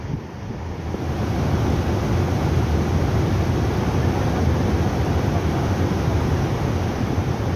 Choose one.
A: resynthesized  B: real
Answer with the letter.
B